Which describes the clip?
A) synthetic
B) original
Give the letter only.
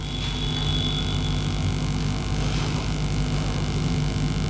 B